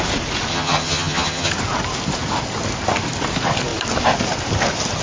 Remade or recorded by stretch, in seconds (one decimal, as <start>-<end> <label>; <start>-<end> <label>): 0.0-0.5 recorded; 0.5-1.5 remade; 1.5-5.0 recorded